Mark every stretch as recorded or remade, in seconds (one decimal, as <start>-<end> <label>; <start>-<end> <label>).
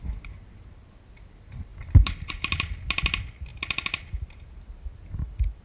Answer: 0.0-5.6 recorded